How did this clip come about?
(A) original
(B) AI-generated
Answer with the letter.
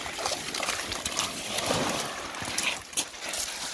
A